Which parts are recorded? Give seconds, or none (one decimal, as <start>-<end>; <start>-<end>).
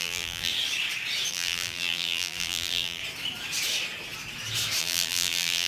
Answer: 0.5-1.3; 3.0-4.8